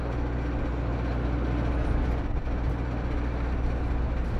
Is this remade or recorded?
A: recorded